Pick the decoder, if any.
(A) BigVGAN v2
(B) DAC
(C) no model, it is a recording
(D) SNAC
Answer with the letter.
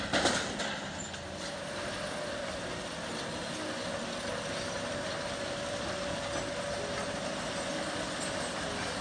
C